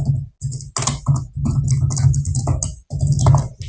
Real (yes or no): yes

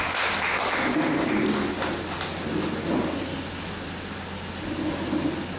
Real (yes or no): yes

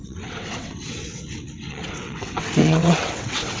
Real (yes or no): no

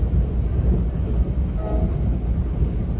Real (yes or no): yes